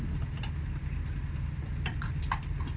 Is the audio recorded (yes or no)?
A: yes